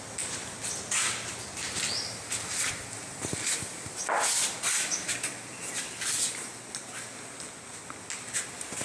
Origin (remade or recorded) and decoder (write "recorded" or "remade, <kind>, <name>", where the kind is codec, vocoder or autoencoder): recorded